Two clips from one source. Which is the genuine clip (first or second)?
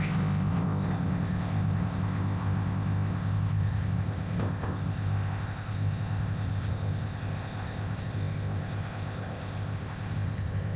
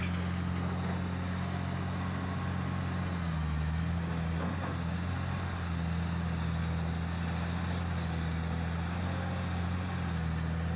second